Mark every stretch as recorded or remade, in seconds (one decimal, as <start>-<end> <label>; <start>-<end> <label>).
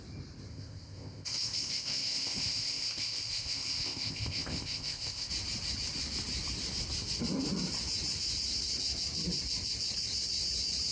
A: 0.0-0.5 recorded; 0.5-5.3 remade; 5.3-10.9 recorded